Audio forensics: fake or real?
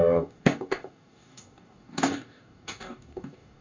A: fake